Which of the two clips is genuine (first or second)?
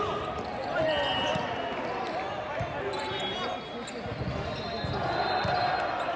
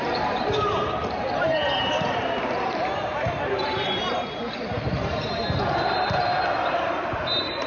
first